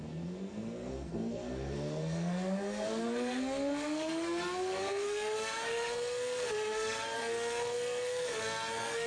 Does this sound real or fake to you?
fake